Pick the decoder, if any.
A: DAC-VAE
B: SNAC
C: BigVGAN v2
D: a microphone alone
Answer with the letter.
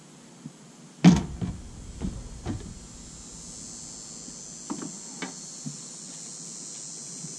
D